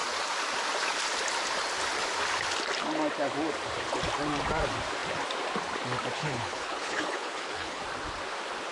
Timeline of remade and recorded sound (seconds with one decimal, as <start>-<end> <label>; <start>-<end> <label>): 0.0-6.2 recorded; 6.2-7.8 remade; 7.8-8.7 recorded